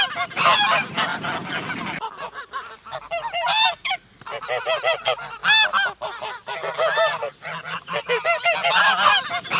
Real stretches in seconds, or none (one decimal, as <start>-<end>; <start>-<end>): 1.1-1.8; 5.4-6.0